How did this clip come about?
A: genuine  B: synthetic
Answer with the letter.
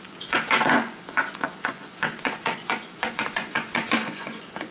B